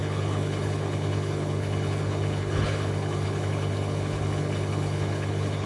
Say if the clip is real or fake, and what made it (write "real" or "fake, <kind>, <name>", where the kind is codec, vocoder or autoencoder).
fake, codec, HILCodec